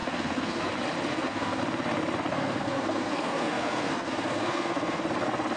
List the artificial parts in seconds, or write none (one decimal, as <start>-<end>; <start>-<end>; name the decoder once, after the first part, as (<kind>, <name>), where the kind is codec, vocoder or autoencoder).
0.0-0.7 (codec, SNAC); 1.1-1.6; 2.3-5.0

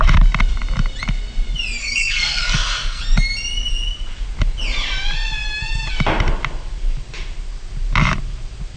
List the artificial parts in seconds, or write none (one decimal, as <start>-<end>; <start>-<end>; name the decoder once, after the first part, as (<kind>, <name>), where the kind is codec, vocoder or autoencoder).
1.8-3.0 (codec, SNAC)

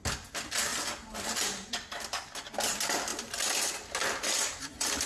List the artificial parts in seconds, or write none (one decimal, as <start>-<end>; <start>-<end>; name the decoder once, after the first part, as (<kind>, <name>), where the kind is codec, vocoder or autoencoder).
none

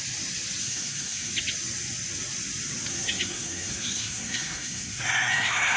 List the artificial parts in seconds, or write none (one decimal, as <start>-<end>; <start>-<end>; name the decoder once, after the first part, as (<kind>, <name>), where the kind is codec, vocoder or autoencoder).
0.6-1.3 (codec, SNAC); 2.9-5.8

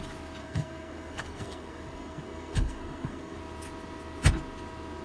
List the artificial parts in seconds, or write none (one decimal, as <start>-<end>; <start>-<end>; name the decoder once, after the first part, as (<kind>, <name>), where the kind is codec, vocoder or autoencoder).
0.4-3.4 (codec, SNAC)

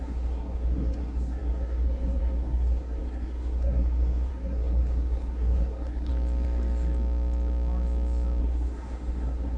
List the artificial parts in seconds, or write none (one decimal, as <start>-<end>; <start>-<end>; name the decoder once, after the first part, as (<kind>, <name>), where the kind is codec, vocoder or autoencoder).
0.0-6.1 (codec, SNAC); 8.4-9.6

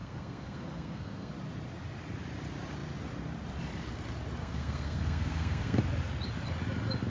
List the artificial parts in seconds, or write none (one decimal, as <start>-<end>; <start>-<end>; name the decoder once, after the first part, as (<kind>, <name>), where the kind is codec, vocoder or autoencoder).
0.0-1.3 (codec, SNAC); 4.4-5.8

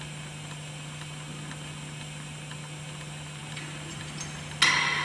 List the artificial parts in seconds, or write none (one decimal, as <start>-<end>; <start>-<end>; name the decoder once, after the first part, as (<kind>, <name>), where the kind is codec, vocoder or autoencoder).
none